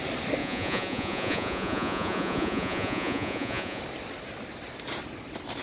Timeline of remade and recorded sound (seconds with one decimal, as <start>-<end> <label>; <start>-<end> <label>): 0.0-0.4 recorded; 0.4-3.8 remade; 3.8-5.6 recorded